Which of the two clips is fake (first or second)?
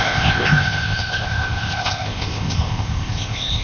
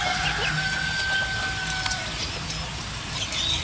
first